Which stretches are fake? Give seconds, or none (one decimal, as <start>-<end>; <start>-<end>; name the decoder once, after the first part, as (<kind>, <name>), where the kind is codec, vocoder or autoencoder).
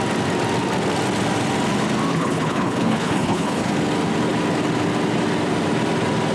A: 2.1-3.7 (codec, HILCodec)